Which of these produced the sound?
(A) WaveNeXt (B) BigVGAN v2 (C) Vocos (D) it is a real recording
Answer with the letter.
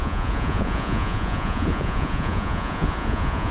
C